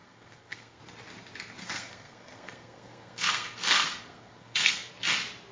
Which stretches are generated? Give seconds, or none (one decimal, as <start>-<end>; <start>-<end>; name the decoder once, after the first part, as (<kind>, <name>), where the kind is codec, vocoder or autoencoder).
0.0-0.8 (codec, SNAC); 1.6-4.9